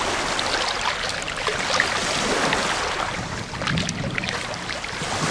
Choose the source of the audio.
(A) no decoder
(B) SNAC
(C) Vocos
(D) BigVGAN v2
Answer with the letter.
A